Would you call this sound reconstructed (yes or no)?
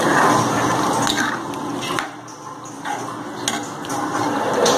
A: no